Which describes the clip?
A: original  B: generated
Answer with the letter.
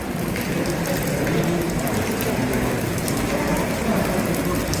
B